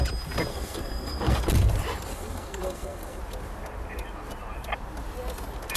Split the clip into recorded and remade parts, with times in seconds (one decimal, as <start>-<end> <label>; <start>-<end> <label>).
0.0-0.5 recorded; 0.5-1.4 remade; 1.4-2.1 recorded; 2.1-3.2 remade; 3.2-5.8 recorded